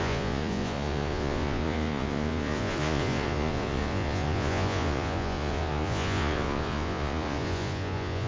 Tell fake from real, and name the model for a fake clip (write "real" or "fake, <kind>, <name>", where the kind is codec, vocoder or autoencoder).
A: fake, vocoder, Vocos